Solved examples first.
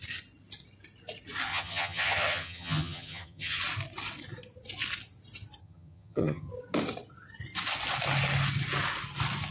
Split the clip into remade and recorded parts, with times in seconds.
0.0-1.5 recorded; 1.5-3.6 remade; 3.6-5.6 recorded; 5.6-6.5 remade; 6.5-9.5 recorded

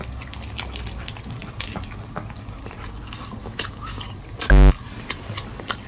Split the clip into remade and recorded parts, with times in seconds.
0.0-3.4 recorded; 3.4-4.0 remade; 4.0-5.9 recorded